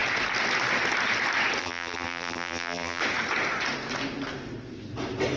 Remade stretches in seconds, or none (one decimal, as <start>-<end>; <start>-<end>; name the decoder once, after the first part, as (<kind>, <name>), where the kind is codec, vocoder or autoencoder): 1.6-3.0 (vocoder, BigVGAN v2)